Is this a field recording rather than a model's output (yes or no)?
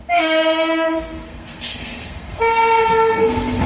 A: no